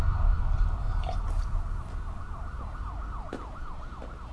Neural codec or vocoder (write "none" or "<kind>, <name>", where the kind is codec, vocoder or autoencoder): none